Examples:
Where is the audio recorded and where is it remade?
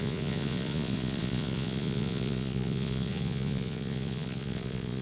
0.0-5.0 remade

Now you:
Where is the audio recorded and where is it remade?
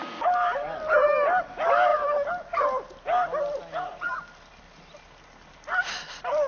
0.0-6.5 recorded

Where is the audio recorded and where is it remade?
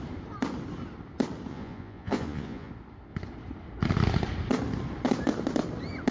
0.0-1.5 recorded; 1.5-2.7 remade; 2.7-6.1 recorded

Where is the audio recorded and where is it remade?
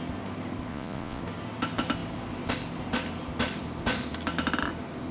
0.0-0.7 recorded; 0.7-1.2 remade; 1.2-5.1 recorded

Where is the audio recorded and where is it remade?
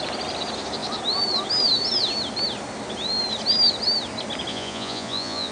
0.0-4.5 recorded; 4.5-5.5 remade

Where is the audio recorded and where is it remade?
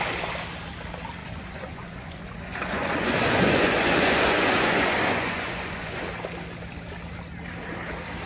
0.0-1.2 recorded; 1.2-6.0 remade; 6.0-8.3 recorded